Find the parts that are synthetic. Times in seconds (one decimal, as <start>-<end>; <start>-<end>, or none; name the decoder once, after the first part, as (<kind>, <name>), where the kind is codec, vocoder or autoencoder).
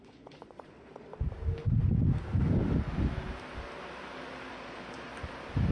0.0-1.1 (vocoder, Vocos); 4.5-5.1